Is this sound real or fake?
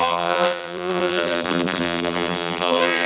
fake